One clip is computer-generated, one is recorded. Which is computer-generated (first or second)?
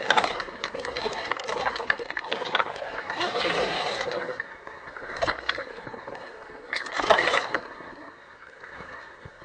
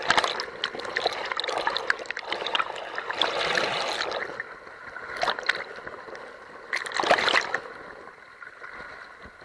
first